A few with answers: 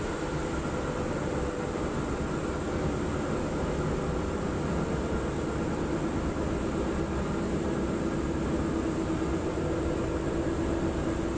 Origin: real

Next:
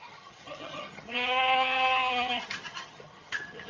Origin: fake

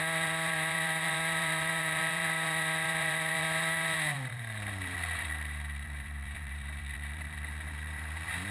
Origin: fake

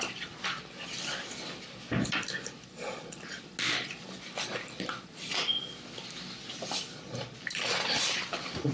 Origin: real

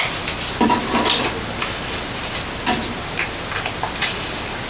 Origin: real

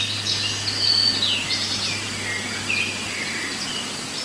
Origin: real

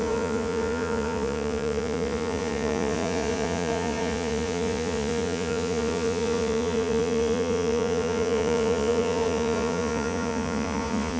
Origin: fake